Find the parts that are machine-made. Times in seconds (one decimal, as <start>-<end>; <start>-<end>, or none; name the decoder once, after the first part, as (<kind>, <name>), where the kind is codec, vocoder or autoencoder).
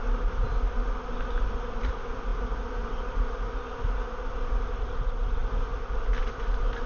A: none